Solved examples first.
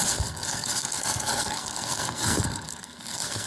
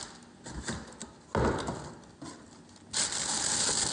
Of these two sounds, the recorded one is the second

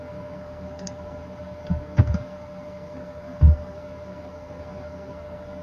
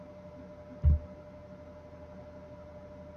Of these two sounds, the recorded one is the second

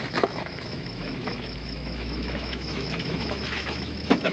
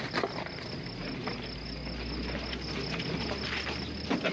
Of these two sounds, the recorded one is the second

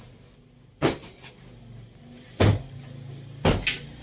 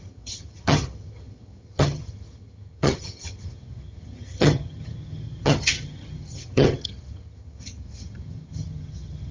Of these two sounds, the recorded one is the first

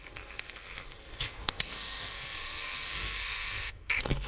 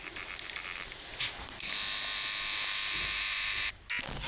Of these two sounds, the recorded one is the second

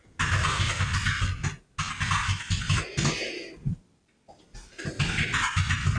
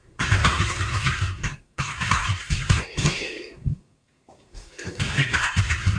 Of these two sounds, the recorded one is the first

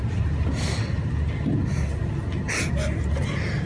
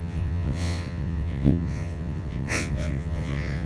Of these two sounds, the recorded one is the first